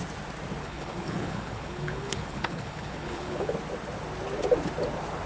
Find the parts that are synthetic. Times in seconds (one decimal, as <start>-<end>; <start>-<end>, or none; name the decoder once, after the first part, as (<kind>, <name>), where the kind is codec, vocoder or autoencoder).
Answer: 0.6-3.5 (codec, HILCodec)

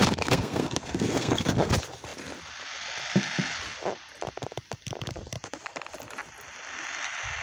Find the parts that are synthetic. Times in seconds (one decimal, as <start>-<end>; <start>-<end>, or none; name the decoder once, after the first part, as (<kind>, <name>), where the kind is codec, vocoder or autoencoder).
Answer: 0.0-1.7 (codec, SNAC)

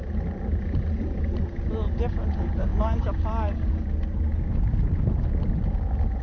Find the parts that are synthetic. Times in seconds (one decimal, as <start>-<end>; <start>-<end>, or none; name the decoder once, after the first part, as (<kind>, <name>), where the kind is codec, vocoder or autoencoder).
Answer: none

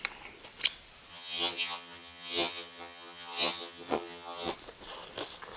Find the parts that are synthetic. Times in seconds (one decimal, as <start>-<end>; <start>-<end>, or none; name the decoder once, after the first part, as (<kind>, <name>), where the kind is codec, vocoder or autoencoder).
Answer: 1.1-4.5 (vocoder, HiFi-GAN)

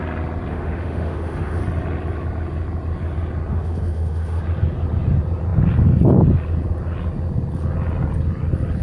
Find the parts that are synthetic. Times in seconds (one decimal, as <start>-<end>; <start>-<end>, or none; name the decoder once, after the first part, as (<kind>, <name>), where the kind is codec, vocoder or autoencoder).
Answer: 0.5-1.6 (autoencoder, DAC-VAE); 3.5-4.4

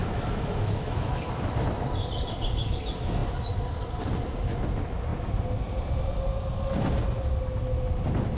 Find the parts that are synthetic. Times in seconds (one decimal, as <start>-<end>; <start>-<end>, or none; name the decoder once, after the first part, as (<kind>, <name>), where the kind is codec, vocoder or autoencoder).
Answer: 0.0-1.2 (autoencoder, DAC-VAE)

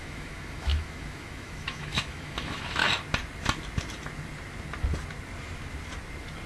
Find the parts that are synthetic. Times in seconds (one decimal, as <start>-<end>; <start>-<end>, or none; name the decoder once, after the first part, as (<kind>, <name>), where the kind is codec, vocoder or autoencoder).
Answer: 0.0-2.8 (autoencoder, DAC-VAE)

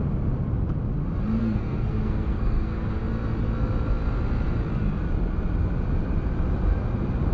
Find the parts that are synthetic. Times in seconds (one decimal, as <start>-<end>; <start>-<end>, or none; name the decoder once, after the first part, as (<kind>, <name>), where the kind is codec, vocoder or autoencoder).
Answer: 1.4-3.0 (codec, SNAC)